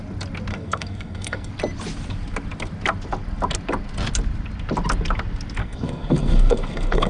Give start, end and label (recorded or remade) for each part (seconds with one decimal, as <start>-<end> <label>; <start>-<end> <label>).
0.0-0.5 recorded; 0.5-1.5 remade; 1.5-5.6 recorded; 5.6-7.1 remade